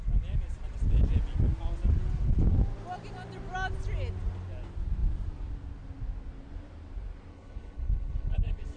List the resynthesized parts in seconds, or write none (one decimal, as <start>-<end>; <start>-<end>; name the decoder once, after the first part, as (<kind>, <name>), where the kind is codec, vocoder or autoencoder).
7.3-8.8 (codec, HILCodec)